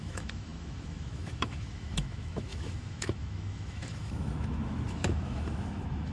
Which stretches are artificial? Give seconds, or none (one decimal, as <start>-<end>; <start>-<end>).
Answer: 0.0-6.1